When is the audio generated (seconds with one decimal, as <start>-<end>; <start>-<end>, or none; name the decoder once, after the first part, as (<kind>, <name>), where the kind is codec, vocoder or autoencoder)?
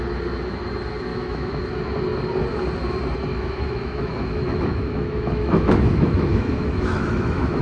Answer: 1.1-1.6 (autoencoder, DAC-VAE); 3.3-7.6